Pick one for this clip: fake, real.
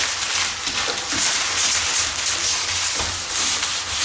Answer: real